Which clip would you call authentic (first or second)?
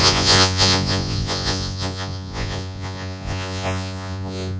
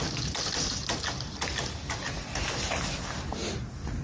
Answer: second